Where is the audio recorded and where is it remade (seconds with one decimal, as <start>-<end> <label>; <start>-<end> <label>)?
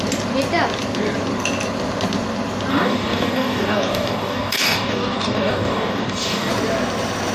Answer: 0.0-2.7 recorded; 2.7-6.5 remade; 6.5-7.3 recorded